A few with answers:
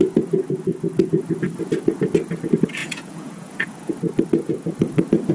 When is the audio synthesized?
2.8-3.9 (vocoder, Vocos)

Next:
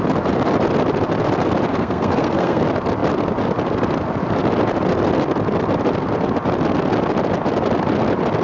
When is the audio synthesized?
1.7-2.6 (codec, SNAC)

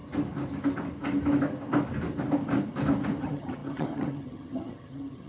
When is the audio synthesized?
3.2-5.3 (vocoder, HiFi-GAN)

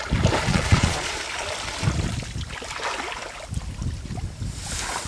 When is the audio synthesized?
0.5-1.2 (vocoder, Vocos)

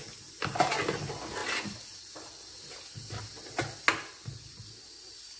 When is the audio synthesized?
none

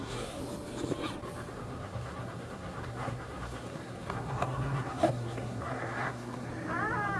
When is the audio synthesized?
0.0-0.4 (codec, SNAC); 1.5-6.5